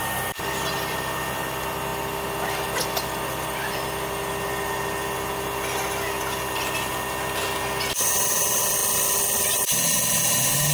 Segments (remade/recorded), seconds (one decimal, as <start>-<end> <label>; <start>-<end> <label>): 0.0-10.7 recorded